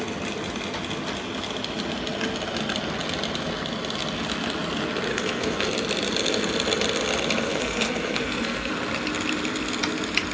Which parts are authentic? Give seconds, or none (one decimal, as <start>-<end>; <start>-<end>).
0.0-5.1; 5.7-7.5; 8.7-10.3